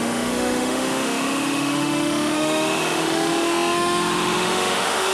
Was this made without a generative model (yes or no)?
no